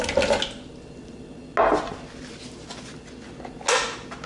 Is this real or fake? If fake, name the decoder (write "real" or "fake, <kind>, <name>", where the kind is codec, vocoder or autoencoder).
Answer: real